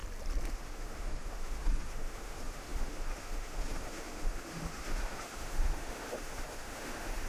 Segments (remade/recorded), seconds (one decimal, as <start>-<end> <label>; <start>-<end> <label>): 0.0-0.5 recorded; 0.5-7.3 remade